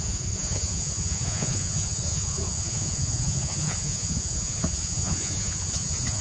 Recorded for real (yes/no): no